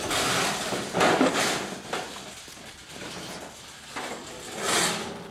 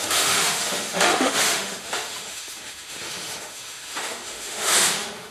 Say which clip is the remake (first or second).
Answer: second